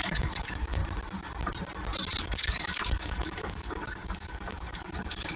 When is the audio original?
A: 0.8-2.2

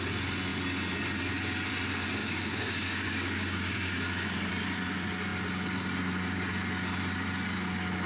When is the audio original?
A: 0.0-2.2; 4.5-8.1

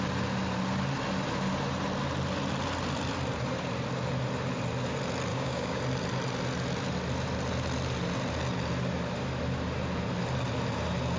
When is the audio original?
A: 0.0-5.3; 5.8-11.2

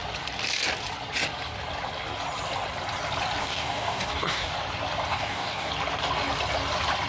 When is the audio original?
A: 0.0-3.4; 4.5-5.1; 5.7-7.1

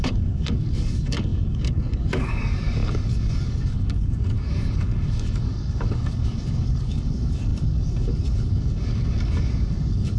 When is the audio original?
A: none

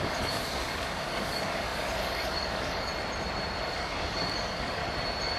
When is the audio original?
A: 2.9-3.7; 4.8-5.4

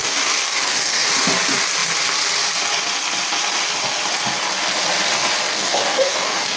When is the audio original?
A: 1.1-5.5